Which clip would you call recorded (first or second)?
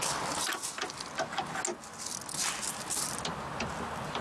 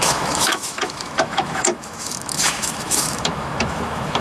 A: first